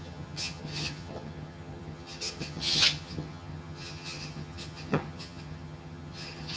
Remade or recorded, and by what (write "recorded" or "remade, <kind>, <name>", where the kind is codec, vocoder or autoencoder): remade, vocoder, HiFi-GAN